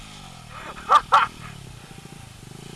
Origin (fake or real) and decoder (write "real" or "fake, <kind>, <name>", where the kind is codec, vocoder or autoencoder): real